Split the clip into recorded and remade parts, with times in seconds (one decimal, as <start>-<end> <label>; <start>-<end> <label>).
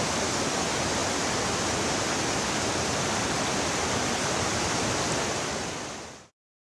0.0-6.6 recorded